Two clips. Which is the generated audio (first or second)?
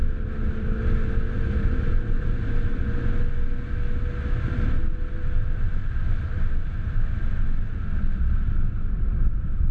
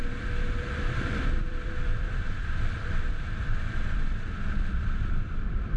second